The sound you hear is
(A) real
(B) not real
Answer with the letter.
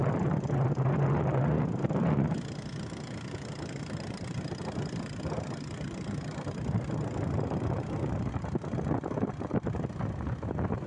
A